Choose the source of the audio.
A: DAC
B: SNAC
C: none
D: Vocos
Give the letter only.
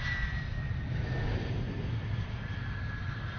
C